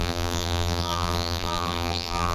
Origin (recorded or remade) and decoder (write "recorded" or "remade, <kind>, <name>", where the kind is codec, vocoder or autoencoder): remade, vocoder, BigVGAN v2